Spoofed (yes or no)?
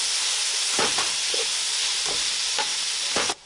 no